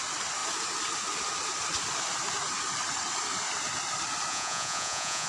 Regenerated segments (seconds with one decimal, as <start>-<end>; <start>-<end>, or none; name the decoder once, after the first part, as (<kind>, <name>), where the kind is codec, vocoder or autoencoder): 4.3-5.3 (vocoder, Vocos)